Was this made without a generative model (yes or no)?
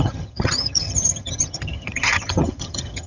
no